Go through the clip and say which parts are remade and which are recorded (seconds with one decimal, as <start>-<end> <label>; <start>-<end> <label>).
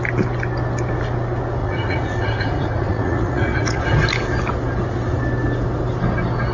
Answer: 0.0-1.6 recorded; 1.6-3.8 remade; 3.8-6.5 recorded